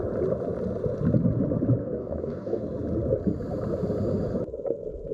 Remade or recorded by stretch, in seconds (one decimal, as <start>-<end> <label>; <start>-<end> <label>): 0.0-1.8 recorded; 1.8-2.6 remade; 2.6-5.1 recorded